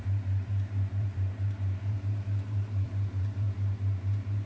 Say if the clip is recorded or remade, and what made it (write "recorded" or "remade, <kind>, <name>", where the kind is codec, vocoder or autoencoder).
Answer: remade, vocoder, BigVGAN v2